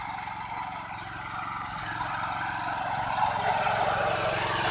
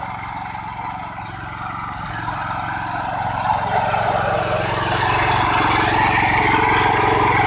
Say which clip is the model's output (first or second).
first